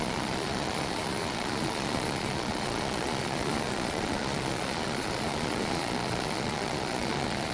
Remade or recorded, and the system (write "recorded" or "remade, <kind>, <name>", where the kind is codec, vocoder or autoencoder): remade, vocoder, Vocos